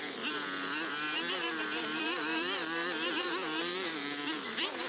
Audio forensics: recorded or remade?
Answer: remade